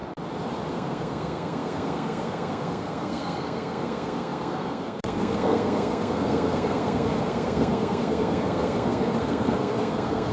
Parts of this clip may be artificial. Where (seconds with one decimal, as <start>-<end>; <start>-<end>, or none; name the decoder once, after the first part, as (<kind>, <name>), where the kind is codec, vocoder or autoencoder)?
0.7-10.3 (codec, SNAC)